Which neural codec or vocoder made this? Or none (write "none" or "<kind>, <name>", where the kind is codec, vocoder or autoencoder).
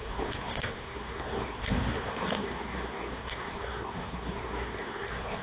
codec, SNAC